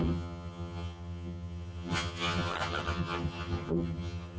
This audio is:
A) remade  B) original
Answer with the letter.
A